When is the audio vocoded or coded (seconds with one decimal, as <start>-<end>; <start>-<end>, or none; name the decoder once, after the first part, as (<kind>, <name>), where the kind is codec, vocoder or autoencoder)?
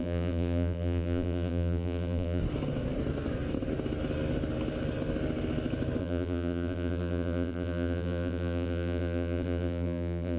0.0-2.4 (vocoder, BigVGAN v2); 6.0-10.4